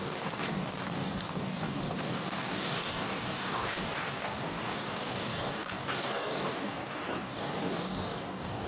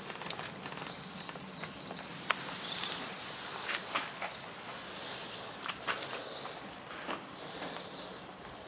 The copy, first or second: first